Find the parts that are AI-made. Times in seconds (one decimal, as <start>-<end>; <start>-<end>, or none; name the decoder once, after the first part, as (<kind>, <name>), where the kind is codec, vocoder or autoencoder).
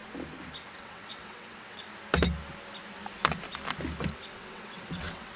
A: 0.8-1.9 (vocoder, WaveNeXt); 4.1-5.4